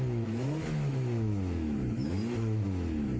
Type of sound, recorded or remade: remade